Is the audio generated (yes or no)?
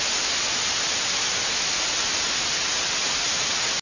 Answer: no